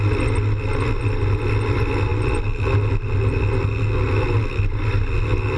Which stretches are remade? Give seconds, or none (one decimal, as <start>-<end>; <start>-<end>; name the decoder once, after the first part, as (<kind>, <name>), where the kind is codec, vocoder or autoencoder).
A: none